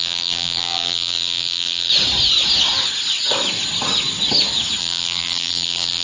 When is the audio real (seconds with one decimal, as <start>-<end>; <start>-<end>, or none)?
1.9-4.8